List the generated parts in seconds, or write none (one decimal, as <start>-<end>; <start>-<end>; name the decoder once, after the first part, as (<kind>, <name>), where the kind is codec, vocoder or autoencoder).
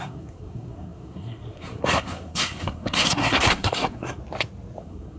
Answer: 0.0-4.2 (codec, SNAC); 4.8-5.2